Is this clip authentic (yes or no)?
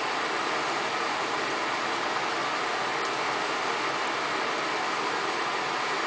yes